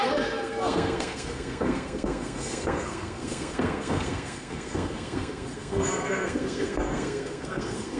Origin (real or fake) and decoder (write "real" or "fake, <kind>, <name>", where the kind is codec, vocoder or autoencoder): fake, codec, SNAC